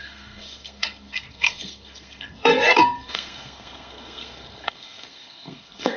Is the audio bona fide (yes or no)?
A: no